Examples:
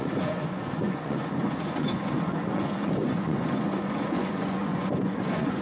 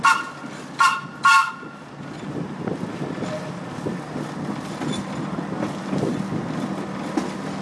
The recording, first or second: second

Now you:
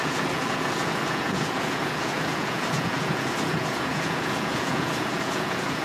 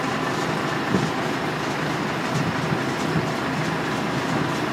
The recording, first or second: second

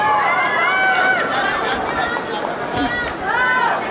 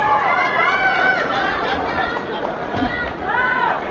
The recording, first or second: first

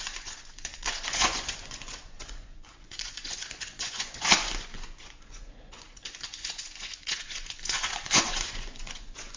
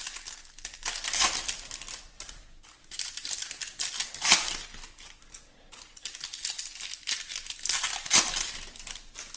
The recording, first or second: second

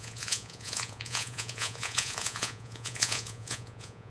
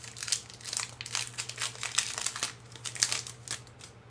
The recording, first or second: second